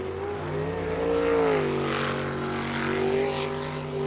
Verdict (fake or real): real